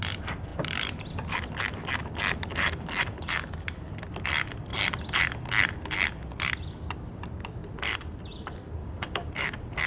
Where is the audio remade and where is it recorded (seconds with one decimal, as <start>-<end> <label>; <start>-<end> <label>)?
0.0-8.8 recorded; 8.8-9.3 remade; 9.3-9.9 recorded